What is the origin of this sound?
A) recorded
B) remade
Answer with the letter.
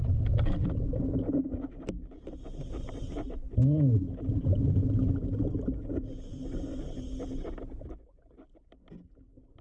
A